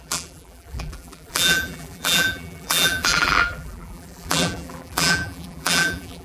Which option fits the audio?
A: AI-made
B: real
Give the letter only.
A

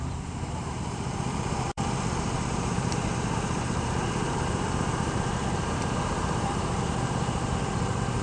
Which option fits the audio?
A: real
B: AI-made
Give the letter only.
B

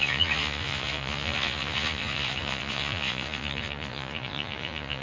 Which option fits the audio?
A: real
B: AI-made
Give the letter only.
B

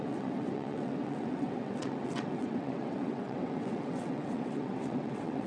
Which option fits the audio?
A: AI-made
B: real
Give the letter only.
A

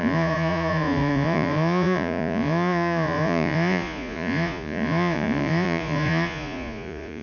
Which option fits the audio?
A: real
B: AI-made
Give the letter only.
B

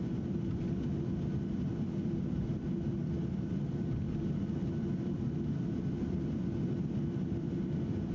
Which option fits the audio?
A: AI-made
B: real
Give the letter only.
B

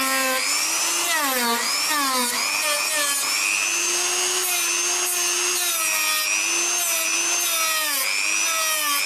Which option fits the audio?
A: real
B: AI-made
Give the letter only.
A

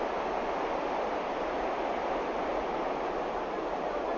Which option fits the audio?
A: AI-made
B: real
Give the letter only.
B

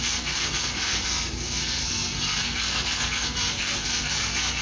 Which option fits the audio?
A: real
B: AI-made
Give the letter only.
B